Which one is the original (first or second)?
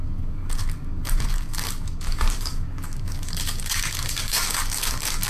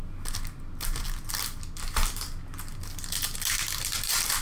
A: second